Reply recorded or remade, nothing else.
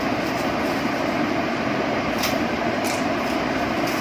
recorded